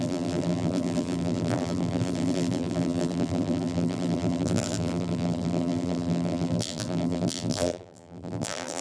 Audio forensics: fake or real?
fake